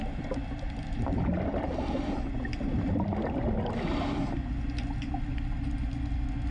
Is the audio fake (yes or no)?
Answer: no